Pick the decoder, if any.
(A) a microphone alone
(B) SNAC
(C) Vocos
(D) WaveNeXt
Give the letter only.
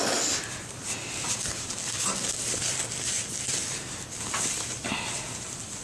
A